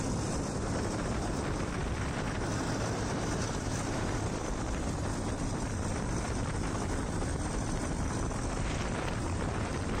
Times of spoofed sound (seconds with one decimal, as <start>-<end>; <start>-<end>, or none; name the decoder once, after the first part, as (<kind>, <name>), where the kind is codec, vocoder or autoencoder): 0.0-7.3 (vocoder, BigVGAN v2); 7.8-10.0